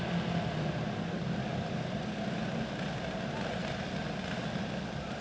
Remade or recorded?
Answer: recorded